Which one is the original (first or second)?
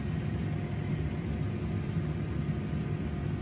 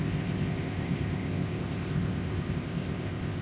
first